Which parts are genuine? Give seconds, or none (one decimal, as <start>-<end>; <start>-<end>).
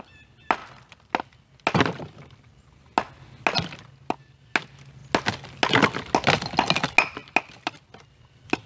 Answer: 0.0-8.7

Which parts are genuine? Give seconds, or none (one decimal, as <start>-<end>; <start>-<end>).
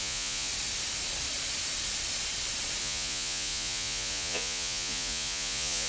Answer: 0.5-2.8